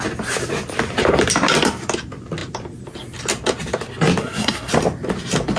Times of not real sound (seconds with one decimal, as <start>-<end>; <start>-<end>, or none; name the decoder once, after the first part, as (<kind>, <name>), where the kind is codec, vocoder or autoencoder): 4.2-4.7 (codec, SNAC)

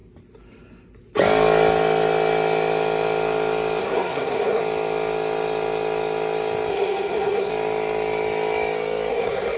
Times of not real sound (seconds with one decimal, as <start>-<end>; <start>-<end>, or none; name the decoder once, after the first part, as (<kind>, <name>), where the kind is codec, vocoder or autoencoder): 3.8-4.6 (codec, SNAC); 6.7-7.5; 9.1-9.6

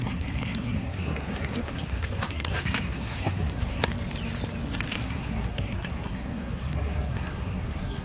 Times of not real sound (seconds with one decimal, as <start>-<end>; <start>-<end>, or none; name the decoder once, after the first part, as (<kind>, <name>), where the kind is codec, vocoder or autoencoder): 0.0-3.9 (codec, SNAC); 4.9-8.0

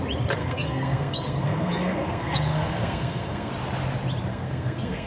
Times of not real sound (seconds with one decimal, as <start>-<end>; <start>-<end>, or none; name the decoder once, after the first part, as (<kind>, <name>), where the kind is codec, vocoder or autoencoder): 0.4-3.5 (codec, SNAC); 4.3-5.1

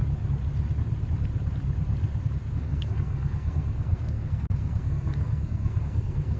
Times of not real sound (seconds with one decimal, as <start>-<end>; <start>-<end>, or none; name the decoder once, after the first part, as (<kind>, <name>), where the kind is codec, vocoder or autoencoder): 2.5-6.4 (codec, SNAC)

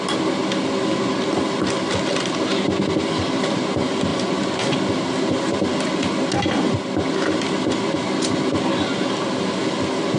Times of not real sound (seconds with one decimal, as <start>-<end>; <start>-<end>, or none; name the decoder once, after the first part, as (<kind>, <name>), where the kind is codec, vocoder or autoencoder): none

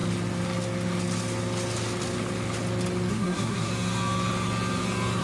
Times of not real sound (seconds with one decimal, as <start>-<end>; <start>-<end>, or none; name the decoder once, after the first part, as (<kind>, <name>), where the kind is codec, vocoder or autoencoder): 3.1-3.7 (codec, SNAC)

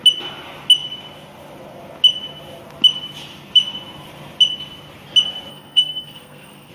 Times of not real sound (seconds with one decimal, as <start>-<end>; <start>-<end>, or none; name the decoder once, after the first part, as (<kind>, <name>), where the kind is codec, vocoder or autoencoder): 5.5-6.7 (codec, SNAC)